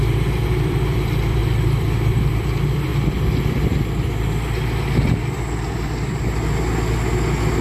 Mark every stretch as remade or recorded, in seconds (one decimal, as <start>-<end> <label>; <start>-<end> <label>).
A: 0.0-2.9 remade; 2.9-7.6 recorded